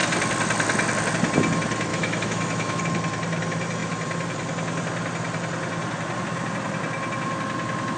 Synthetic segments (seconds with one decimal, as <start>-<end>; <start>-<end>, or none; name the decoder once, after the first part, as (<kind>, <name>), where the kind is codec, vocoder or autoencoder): 1.9-2.8 (autoencoder, DAC-VAE)